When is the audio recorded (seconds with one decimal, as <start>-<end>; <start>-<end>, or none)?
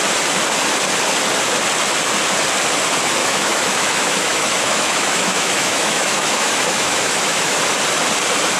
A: 0.0-3.2; 7.6-8.6